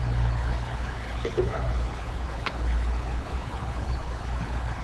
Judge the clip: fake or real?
fake